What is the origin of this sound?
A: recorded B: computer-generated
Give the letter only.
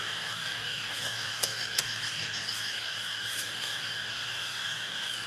B